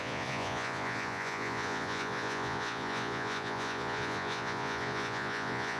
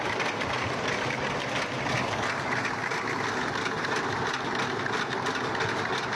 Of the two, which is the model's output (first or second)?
first